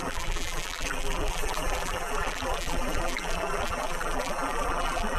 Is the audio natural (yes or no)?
no